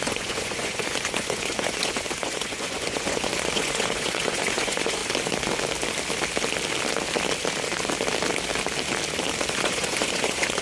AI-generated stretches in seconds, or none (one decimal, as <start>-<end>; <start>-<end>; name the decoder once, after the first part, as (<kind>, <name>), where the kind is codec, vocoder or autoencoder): 0.0-5.0 (vocoder, Vocos); 9.5-10.6